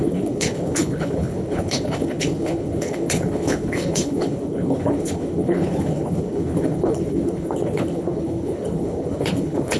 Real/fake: fake